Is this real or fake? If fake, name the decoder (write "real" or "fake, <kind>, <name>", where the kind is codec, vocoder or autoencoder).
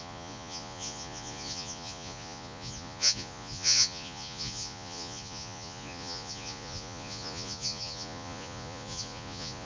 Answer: fake, vocoder, Vocos